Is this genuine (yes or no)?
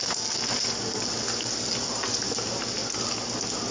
yes